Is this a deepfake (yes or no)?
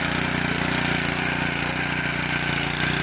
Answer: no